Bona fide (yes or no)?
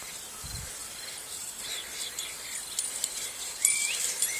no